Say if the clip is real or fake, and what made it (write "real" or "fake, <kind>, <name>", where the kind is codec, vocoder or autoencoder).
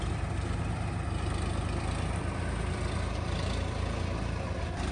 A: real